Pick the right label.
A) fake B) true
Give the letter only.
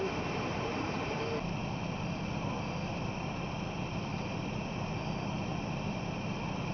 B